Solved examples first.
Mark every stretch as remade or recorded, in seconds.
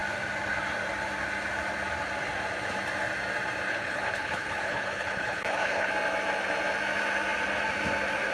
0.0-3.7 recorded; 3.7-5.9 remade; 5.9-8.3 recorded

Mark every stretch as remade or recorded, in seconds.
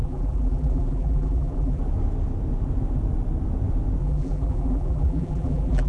0.0-1.8 remade; 1.8-4.0 recorded; 4.0-5.9 remade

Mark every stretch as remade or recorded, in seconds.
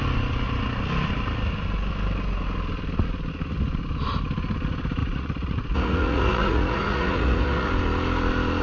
0.0-5.0 recorded; 5.0-7.7 remade; 7.7-8.6 recorded